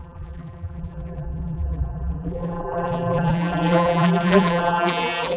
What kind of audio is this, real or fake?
fake